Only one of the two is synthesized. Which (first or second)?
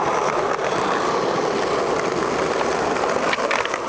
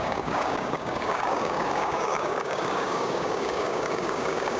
second